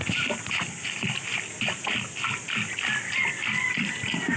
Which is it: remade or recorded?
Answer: recorded